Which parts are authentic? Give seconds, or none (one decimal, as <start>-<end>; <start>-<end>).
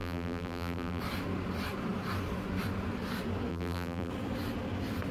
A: 1.0-3.5; 4.1-5.1